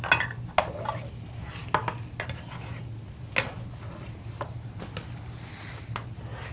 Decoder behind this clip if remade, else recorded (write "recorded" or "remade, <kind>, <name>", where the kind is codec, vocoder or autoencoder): recorded